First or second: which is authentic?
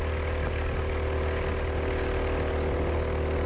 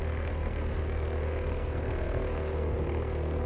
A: first